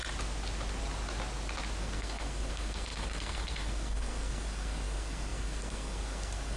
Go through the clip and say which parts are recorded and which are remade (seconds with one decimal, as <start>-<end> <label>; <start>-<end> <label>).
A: 0.0-1.8 recorded; 1.8-6.6 remade